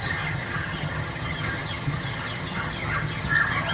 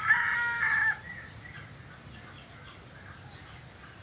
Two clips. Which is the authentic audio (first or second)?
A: second